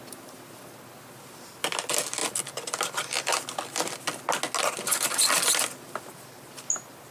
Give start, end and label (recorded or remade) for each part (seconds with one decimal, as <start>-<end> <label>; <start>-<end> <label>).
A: 0.0-7.1 recorded